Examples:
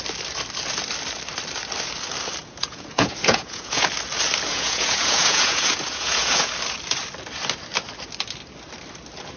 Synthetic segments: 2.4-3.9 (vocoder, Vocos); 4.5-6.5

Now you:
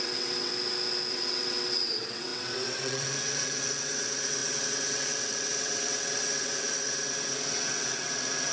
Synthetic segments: 0.0-0.5 (vocoder, WaveNeXt); 1.1-8.5